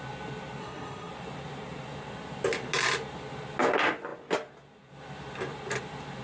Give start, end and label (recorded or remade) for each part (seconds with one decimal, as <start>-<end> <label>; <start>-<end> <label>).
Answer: 0.0-0.6 recorded; 0.6-1.1 remade; 1.1-6.2 recorded